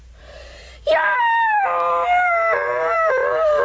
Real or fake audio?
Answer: fake